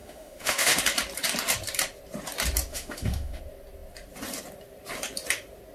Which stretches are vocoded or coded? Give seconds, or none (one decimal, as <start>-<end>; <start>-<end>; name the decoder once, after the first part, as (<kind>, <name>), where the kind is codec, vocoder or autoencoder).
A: 0.0-0.8 (autoencoder, DAC-VAE); 2.7-3.4